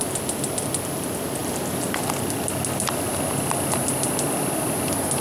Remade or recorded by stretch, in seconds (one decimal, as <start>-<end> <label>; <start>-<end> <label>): 0.0-5.2 recorded